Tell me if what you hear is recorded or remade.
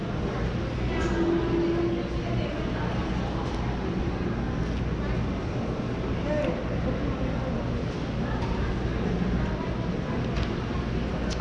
recorded